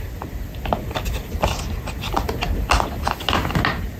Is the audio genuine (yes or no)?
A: yes